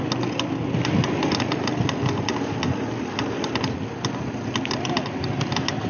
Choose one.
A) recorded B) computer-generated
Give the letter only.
A